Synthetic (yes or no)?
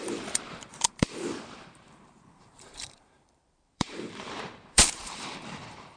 yes